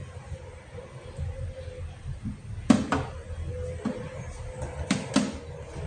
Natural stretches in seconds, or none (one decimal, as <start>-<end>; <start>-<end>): 0.0-5.9